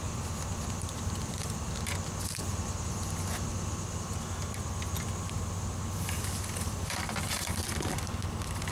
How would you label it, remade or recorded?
recorded